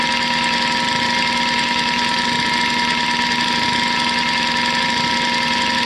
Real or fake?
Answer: real